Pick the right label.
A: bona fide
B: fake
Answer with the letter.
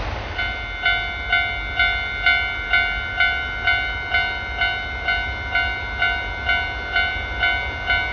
A